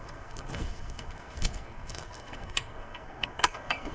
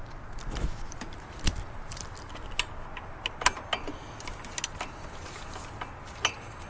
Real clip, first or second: second